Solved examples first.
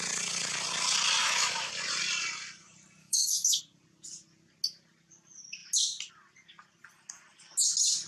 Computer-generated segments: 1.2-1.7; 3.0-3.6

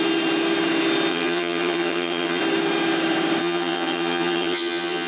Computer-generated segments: 1.1-2.4; 3.4-5.1

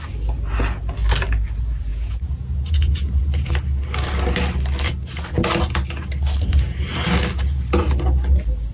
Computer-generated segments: 1.9-3.5